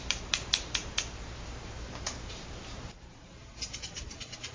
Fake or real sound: fake